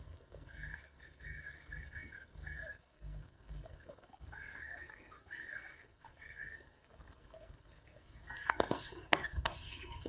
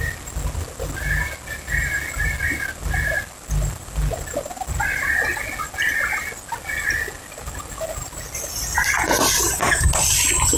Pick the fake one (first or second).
first